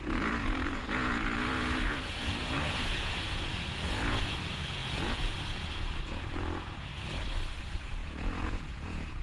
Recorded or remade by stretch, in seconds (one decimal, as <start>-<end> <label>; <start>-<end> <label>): 0.0-6.9 remade; 6.9-7.6 recorded; 7.6-9.2 remade